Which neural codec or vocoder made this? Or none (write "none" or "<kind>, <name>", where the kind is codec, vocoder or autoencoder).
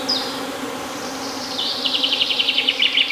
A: vocoder, BigVGAN v2